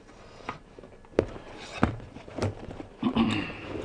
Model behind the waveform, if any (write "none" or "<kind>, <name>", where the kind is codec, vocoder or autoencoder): none